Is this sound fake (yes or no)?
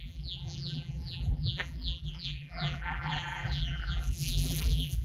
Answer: yes